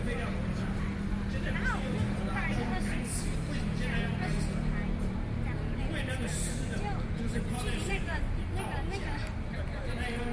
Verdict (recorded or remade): recorded